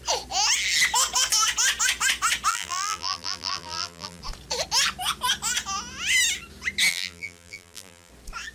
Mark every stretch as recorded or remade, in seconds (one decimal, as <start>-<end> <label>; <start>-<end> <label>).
0.0-2.5 recorded; 2.5-4.2 remade; 4.2-6.9 recorded; 6.9-8.1 remade; 8.1-8.5 recorded